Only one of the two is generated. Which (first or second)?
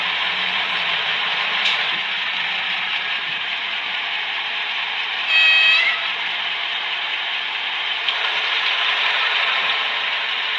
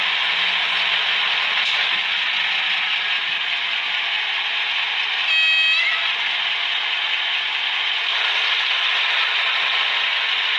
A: first